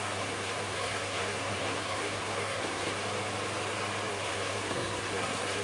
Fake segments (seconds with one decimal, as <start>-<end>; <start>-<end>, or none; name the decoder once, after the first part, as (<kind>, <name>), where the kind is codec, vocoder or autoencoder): 0.0-3.0 (codec, SNAC); 4.1-5.6